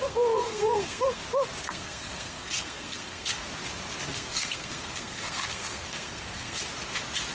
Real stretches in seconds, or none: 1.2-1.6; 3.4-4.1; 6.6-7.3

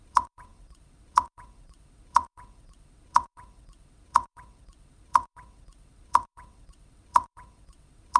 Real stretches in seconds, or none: none

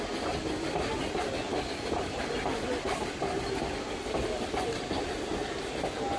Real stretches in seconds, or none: 0.0-1.5; 3.9-6.2